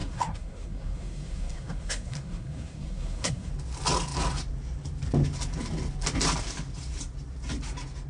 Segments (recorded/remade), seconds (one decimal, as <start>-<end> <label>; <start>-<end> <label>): 0.0-3.5 remade; 3.5-8.1 recorded